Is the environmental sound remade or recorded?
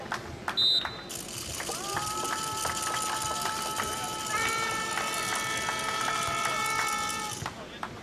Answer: recorded